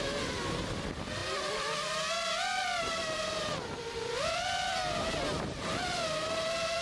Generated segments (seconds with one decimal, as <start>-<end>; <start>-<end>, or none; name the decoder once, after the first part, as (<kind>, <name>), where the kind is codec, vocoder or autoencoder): 0.0-6.8 (vocoder, BigVGAN v2)